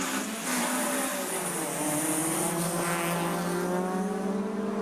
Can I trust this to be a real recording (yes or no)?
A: yes